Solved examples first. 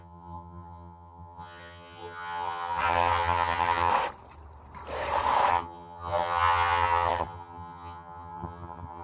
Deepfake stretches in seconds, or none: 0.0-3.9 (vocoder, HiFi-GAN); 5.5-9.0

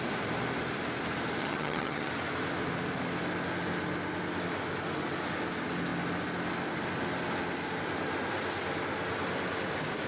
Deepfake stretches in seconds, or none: 1.4-2.1 (vocoder, HiFi-GAN)

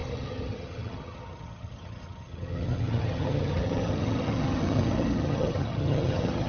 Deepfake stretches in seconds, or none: 0.0-6.5 (vocoder, HiFi-GAN)

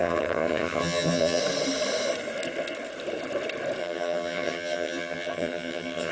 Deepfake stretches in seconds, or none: 0.0-1.4 (vocoder, HiFi-GAN); 3.8-6.1